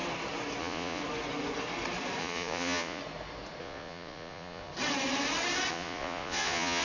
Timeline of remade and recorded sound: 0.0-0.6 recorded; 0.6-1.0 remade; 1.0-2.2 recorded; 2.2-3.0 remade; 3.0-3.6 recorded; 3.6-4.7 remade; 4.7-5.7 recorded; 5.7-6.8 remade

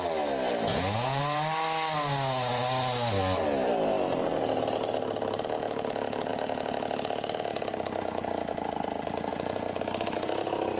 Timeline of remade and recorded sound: 0.0-0.7 recorded; 0.7-1.2 remade; 1.2-9.3 recorded; 9.3-9.8 remade; 9.8-10.8 recorded

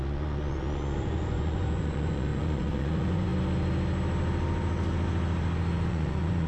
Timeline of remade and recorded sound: 0.0-3.3 remade; 3.3-5.9 recorded; 5.9-6.5 remade

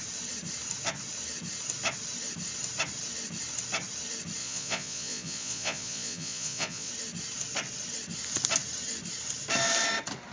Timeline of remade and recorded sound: 0.0-4.4 recorded; 4.4-6.9 remade; 6.9-10.3 recorded

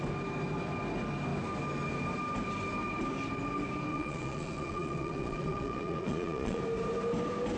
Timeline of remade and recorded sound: 0.0-3.9 recorded; 3.9-6.6 remade; 6.6-7.6 recorded

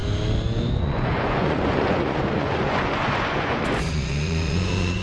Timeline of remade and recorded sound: 0.0-0.8 recorded; 0.8-5.0 remade

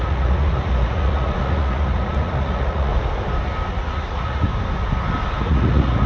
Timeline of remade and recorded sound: 0.0-2.9 remade; 2.9-3.7 recorded; 3.7-4.5 remade; 4.5-5.4 recorded; 5.4-6.1 remade

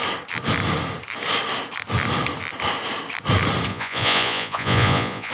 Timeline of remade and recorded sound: 0.0-3.7 recorded; 3.7-5.3 remade